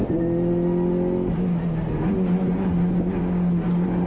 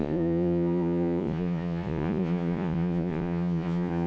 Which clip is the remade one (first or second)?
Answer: second